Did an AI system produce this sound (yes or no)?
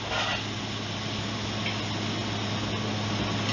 no